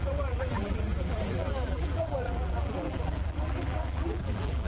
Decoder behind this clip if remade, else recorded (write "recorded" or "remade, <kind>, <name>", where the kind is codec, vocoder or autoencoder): remade, vocoder, BigVGAN v2